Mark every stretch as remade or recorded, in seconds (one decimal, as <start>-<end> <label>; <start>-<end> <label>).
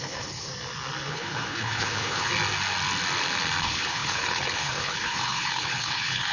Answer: 0.0-0.5 remade; 0.5-1.1 recorded; 1.1-2.3 remade; 2.3-3.6 recorded; 3.6-6.3 remade